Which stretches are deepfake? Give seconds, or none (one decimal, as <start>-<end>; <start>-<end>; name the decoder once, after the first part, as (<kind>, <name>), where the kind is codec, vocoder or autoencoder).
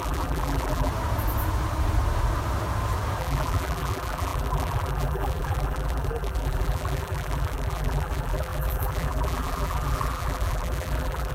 0.0-0.9 (vocoder, BigVGAN v2); 3.2-11.3